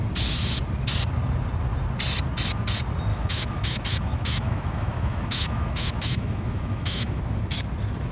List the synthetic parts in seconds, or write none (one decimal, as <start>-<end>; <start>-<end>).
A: 3.1-7.2